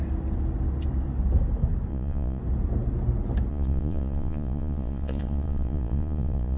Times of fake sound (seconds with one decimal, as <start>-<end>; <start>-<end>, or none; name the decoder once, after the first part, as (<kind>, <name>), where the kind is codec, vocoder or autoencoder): 1.9-2.4 (vocoder, Vocos); 3.5-6.6